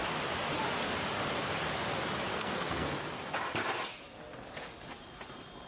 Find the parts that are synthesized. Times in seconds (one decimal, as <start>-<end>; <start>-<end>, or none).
2.3-2.9